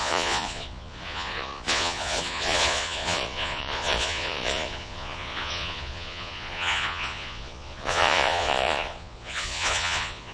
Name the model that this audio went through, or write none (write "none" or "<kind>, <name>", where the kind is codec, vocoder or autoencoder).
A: vocoder, Vocos